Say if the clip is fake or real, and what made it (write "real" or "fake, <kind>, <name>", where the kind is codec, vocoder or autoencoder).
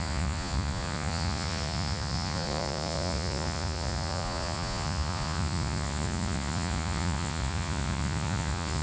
fake, vocoder, Vocos